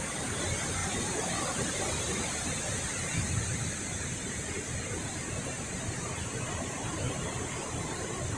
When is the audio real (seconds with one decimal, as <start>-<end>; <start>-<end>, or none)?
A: 0.0-0.8; 2.2-8.4